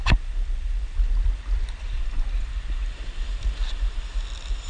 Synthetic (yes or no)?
no